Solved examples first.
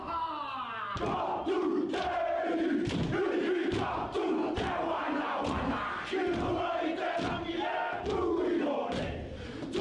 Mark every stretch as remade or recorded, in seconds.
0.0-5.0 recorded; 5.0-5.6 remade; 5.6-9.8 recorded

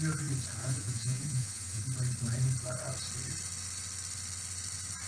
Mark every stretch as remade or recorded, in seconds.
0.0-0.6 recorded; 0.6-1.8 remade; 1.8-5.1 recorded